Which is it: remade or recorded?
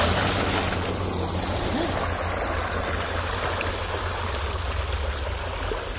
recorded